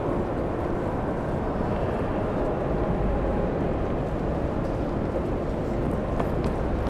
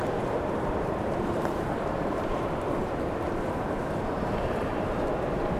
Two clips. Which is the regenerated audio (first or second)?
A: second